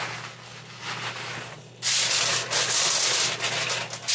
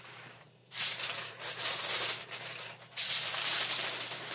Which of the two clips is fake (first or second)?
second